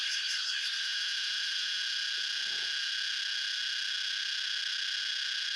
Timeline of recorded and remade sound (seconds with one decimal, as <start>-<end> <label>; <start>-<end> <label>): 0.0-0.8 remade; 0.8-5.6 recorded